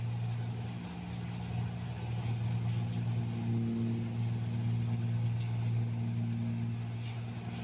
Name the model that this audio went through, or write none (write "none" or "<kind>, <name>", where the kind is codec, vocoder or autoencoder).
none